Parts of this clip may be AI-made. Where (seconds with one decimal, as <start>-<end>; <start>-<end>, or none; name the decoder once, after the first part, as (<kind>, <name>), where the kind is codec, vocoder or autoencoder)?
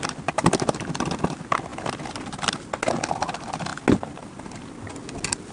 none